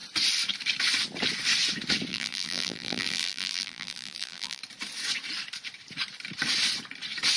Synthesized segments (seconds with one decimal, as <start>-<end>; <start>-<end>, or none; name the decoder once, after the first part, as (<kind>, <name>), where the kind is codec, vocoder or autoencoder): 2.1-4.6 (vocoder, BigVGAN v2)